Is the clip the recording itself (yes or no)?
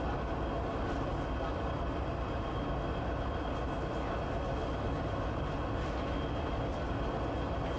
yes